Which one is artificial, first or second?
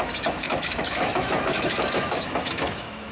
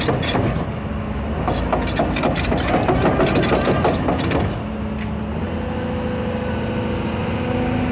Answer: first